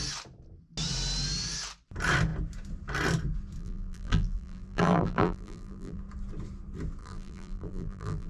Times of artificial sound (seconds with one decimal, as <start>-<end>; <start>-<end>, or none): 3.6-6.0; 7.0-8.3